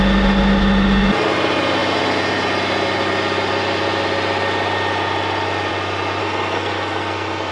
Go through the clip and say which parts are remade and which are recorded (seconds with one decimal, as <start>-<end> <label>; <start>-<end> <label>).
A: 0.0-6.2 recorded; 6.2-7.5 remade